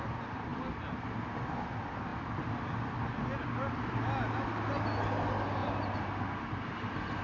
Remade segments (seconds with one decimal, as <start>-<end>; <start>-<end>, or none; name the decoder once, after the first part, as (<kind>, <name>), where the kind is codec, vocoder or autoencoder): 2.1-2.7 (vocoder, BigVGAN v2)